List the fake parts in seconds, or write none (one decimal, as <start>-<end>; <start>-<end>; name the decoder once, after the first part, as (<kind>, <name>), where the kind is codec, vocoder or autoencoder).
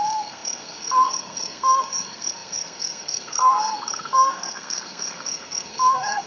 0.0-6.3 (codec, SNAC)